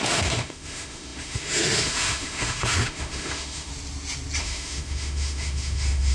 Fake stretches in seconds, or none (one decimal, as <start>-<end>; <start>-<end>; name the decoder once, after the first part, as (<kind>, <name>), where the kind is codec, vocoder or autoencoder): 0.0-3.7 (autoencoder, DAC-VAE); 4.4-6.1